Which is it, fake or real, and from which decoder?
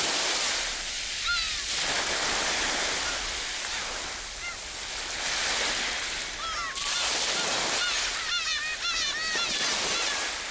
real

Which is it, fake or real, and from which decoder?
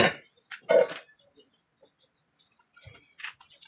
real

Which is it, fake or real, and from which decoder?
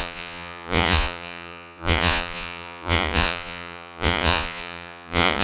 fake, vocoder, Vocos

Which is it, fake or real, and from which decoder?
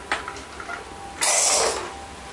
real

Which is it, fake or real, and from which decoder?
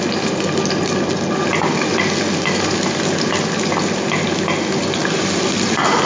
real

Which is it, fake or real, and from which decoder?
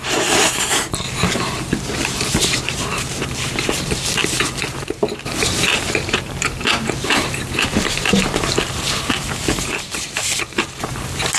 fake, vocoder, BigVGAN v2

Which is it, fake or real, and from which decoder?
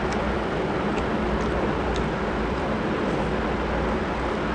real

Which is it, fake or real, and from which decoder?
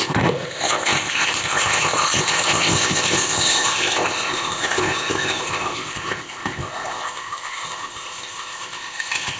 fake, codec, ZipCodec